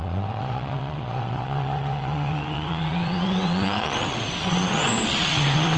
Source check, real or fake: fake